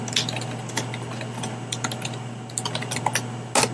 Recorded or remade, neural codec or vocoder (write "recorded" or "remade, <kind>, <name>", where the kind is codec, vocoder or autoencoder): recorded